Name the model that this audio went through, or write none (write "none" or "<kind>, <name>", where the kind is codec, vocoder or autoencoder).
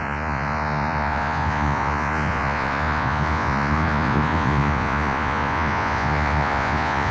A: vocoder, Vocos